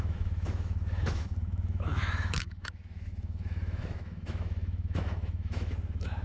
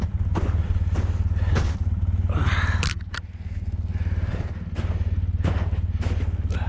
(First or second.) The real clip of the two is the second